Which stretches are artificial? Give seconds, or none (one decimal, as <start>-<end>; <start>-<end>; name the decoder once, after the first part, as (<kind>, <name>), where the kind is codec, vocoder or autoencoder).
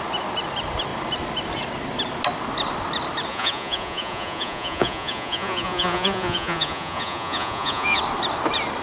3.3-8.0 (vocoder, Vocos)